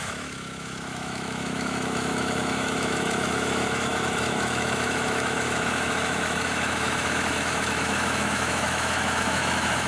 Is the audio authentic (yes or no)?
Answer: no